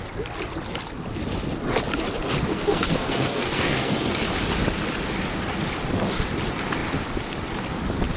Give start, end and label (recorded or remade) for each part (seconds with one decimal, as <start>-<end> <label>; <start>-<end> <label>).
0.0-2.5 recorded; 2.5-4.3 remade; 4.3-8.2 recorded

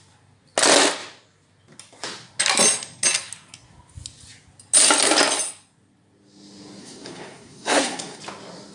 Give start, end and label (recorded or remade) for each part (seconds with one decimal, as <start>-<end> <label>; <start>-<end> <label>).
0.0-6.8 recorded; 6.8-8.2 remade; 8.2-8.7 recorded